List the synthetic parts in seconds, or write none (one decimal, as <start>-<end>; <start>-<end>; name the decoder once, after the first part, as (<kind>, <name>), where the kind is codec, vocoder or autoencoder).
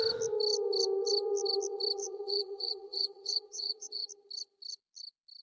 2.0-4.1 (vocoder, Vocos)